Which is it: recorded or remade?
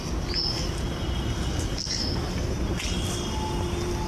recorded